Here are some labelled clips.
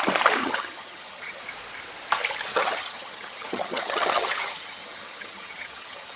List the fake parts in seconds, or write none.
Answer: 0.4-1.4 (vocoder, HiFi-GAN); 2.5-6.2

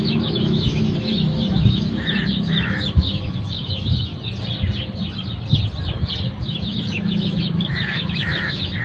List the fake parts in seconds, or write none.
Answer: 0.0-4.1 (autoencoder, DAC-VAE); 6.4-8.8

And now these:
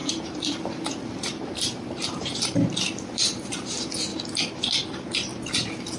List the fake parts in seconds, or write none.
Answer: 0.0-4.1 (vocoder, BigVGAN v2); 4.6-5.3

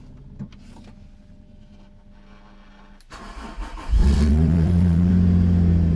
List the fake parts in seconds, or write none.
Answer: 4.0-5.1 (vocoder, WaveNeXt)

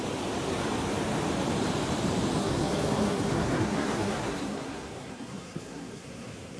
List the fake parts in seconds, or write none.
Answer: 2.4-6.6 (codec, SNAC)

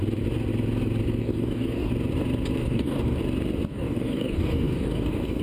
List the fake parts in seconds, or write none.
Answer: 1.2-1.9 (codec, DAC); 2.6-3.2; 3.7-5.4

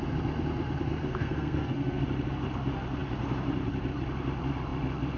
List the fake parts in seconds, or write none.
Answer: 1.0-2.0 (codec, SNAC)

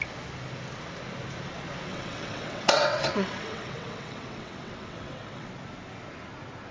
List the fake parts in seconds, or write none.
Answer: 1.9-5.5 (vocoder, WaveNeXt)